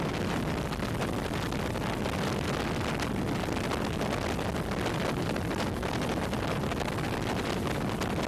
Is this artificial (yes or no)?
no